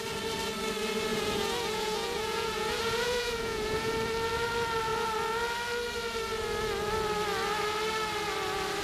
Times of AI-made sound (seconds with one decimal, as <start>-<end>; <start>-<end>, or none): 1.1-3.9